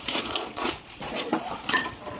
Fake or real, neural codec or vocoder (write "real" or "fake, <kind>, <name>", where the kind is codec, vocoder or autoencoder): fake, vocoder, Vocos